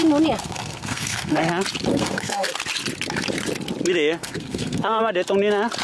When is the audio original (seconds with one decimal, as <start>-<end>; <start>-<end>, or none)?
0.0-0.4; 1.5-1.9; 2.5-4.2; 5.0-5.8